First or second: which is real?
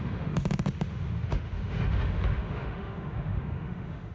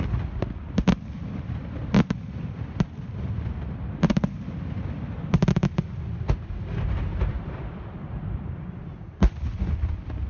second